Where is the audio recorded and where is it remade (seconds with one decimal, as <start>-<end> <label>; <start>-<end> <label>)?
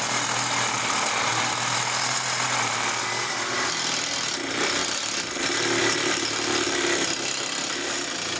0.0-8.4 recorded